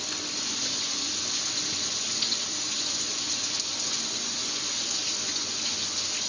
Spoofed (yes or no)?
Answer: yes